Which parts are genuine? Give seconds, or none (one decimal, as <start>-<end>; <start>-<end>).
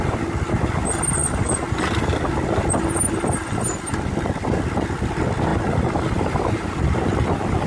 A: 0.0-7.7